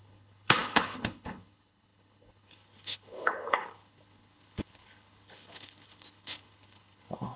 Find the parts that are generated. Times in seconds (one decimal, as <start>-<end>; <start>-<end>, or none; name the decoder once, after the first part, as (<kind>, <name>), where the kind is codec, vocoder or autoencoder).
0.0-7.4 (codec, HILCodec)